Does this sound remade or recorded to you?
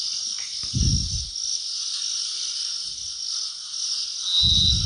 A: recorded